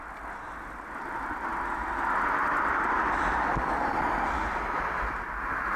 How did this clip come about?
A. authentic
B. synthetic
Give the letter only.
A